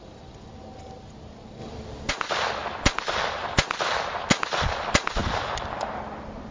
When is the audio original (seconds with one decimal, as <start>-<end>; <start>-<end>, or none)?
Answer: 0.0-1.6; 2.1-3.4; 4.1-5.2; 5.8-6.5